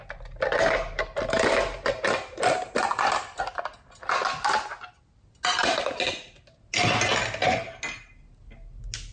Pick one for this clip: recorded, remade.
recorded